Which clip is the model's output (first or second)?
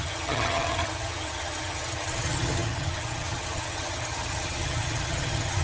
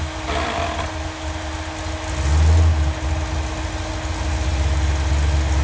first